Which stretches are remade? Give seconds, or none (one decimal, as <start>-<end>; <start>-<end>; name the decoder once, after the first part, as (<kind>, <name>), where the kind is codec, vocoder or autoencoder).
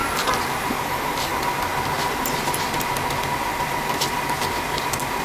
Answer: 0.0-0.7 (vocoder, BigVGAN v2)